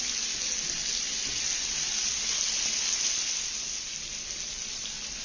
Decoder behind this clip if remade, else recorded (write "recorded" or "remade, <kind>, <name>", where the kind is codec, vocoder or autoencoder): recorded